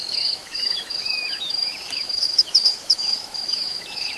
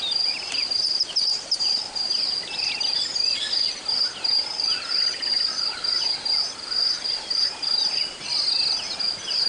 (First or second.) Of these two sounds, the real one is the second